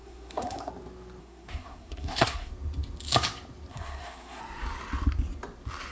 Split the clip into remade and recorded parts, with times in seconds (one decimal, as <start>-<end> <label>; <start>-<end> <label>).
0.0-0.7 remade; 0.7-1.2 recorded; 1.2-2.5 remade; 2.5-3.7 recorded; 3.7-4.4 remade; 4.4-5.9 recorded